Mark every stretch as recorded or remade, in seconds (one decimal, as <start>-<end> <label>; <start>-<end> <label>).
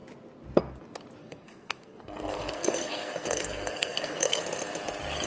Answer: 0.0-1.2 recorded; 1.2-4.4 remade; 4.4-5.3 recorded